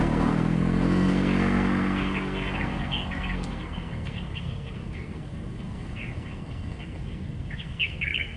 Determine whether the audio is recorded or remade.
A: remade